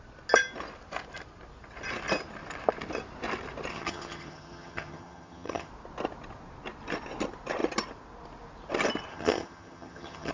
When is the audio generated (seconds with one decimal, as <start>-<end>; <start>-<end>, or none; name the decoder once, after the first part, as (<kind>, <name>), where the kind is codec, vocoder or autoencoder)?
3.7-5.7 (vocoder, HiFi-GAN); 9.1-10.3